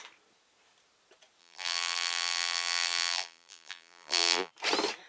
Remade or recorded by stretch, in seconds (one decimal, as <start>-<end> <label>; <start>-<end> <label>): 0.0-1.4 recorded; 1.4-4.5 remade; 4.5-5.1 recorded